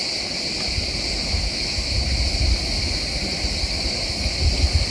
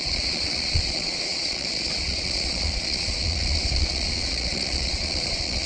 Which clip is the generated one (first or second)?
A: second